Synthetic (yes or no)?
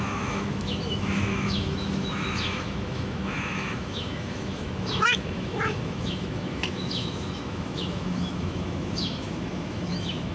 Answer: yes